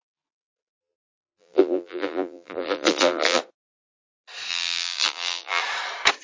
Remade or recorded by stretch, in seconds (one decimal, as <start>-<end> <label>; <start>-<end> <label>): 0.0-0.7 recorded; 0.7-3.4 remade; 3.4-4.5 recorded; 4.5-5.6 remade; 5.6-6.2 recorded